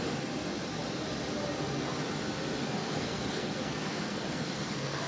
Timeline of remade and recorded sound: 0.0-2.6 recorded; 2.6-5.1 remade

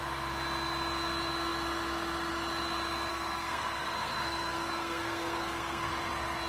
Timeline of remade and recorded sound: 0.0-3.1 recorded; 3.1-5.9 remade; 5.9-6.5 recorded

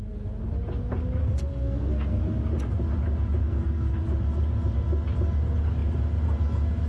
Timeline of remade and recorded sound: 0.0-1.2 recorded; 1.2-2.2 remade; 2.2-3.4 recorded; 3.4-4.0 remade; 4.0-6.9 recorded